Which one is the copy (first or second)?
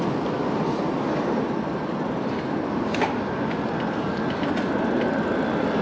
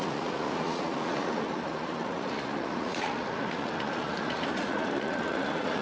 second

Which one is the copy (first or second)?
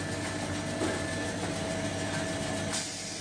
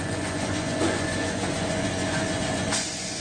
second